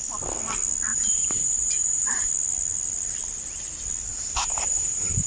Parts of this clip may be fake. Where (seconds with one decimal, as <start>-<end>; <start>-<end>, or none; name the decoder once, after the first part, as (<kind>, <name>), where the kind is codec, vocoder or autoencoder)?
0.9-2.3 (vocoder, BigVGAN v2); 4.1-5.3